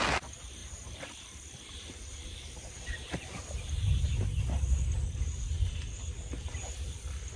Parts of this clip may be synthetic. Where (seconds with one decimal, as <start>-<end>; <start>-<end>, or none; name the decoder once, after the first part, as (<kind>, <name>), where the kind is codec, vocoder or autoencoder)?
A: 0.6-4.1 (vocoder, BigVGAN v2)